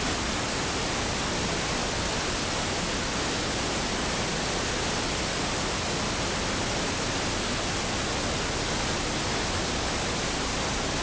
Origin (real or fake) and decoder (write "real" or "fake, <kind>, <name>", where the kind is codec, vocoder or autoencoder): real